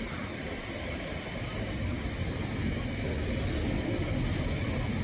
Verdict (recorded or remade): recorded